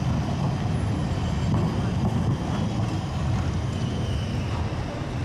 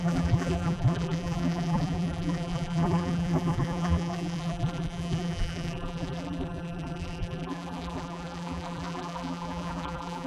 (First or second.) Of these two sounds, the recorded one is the first